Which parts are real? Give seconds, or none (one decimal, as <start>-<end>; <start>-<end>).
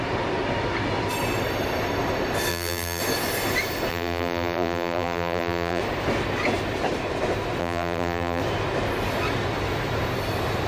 0.0-2.5; 3.0-3.9; 5.8-7.6; 8.4-10.7